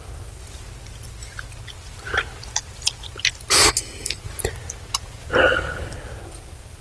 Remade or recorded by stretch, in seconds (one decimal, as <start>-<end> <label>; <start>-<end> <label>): 0.0-6.8 recorded